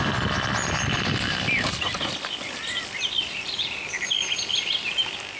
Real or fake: real